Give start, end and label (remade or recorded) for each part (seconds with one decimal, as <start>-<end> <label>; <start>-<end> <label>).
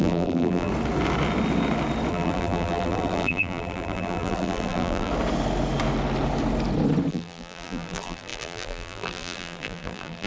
0.0-0.7 remade; 0.7-2.1 recorded; 2.1-5.1 remade; 5.1-7.1 recorded; 7.1-10.3 remade